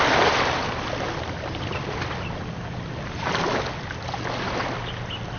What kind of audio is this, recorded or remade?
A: recorded